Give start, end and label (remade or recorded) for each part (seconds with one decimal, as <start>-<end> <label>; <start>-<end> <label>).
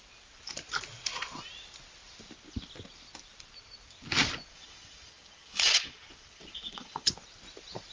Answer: 0.0-4.5 recorded; 4.5-7.1 remade; 7.1-7.9 recorded